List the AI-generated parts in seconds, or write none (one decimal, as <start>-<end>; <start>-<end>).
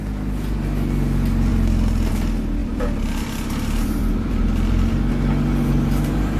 2.6-5.1